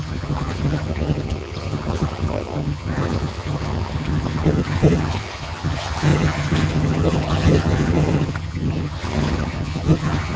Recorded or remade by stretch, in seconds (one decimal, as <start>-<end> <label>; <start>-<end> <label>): 0.0-10.4 remade